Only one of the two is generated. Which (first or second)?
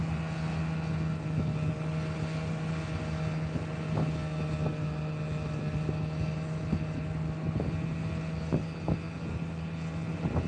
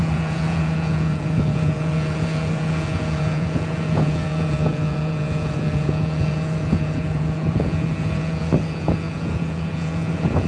second